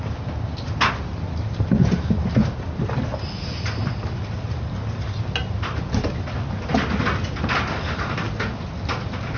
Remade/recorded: recorded